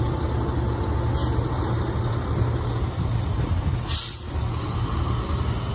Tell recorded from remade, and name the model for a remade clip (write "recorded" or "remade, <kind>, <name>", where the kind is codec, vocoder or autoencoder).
recorded